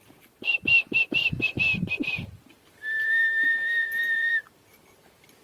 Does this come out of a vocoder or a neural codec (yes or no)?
yes